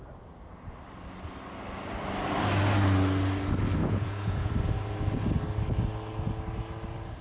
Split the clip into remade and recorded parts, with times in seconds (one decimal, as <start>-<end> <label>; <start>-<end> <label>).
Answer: 0.0-3.8 recorded; 3.8-4.5 remade; 4.5-7.2 recorded

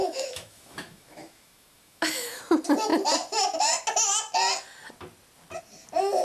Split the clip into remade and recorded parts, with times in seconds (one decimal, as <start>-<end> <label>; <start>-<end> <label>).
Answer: 0.0-2.4 remade; 2.4-6.2 recorded

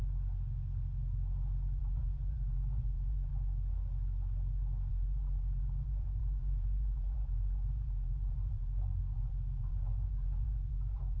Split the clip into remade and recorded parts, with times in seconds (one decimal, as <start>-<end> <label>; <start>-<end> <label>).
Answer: 0.0-1.8 recorded; 1.8-3.3 remade; 3.3-4.9 recorded; 4.9-11.2 remade